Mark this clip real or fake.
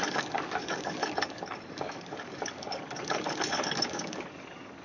fake